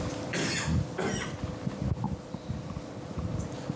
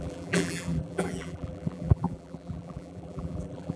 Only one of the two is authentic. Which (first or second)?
first